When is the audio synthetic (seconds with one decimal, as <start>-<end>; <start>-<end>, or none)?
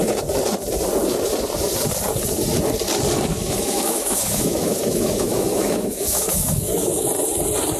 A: 3.3-7.1